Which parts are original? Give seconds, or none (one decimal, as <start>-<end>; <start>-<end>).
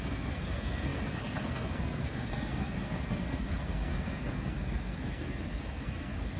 none